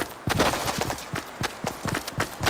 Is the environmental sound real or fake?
real